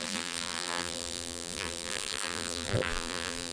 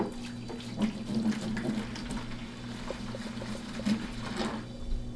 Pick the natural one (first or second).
second